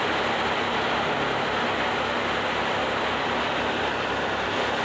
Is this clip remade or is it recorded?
recorded